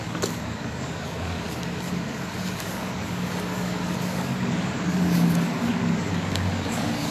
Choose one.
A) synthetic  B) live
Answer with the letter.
A